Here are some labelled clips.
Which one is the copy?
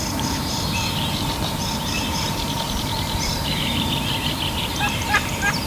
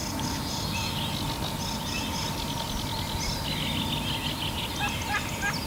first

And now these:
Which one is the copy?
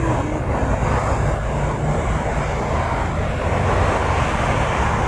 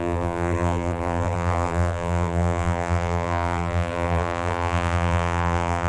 second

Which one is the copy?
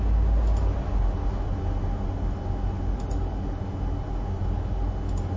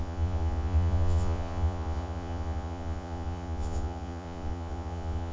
second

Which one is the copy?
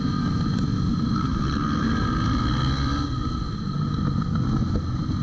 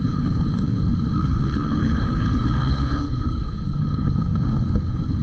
second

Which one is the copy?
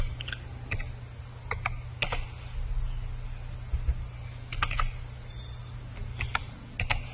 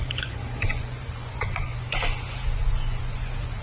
second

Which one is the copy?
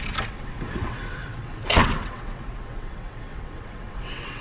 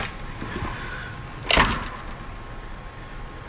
first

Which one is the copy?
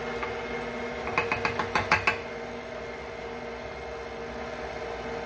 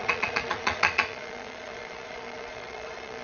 second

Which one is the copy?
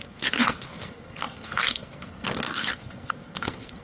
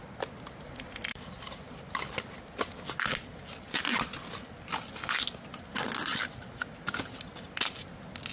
first